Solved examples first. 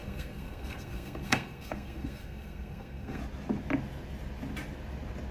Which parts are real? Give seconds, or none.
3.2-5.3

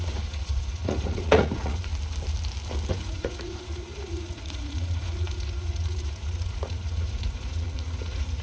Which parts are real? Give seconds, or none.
1.9-2.9

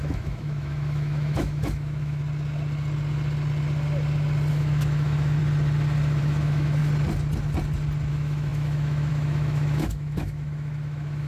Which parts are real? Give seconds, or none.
2.2-4.5; 5.4-6.2; 6.8-8.1

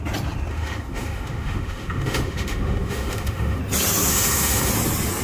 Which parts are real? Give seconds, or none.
0.0-0.5; 3.6-4.1; 4.7-5.2

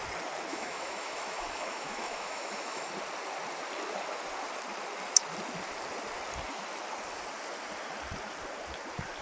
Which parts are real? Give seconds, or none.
0.0-0.5; 2.9-9.2

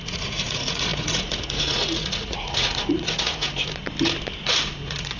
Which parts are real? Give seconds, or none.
3.8-4.4

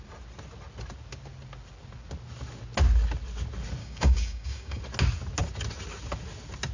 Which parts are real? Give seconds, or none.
0.0-3.8; 4.8-6.7